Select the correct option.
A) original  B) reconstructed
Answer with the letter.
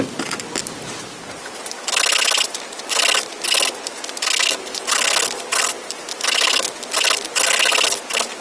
A